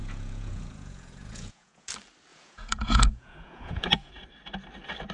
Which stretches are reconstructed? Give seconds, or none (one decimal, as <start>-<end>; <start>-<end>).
0.0-1.9; 2.3-4.1